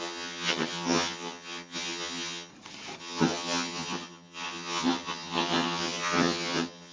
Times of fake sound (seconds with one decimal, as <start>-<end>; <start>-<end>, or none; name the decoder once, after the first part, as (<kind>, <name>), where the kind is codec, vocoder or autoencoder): 0.0-2.5 (vocoder, HiFi-GAN); 3.0-6.9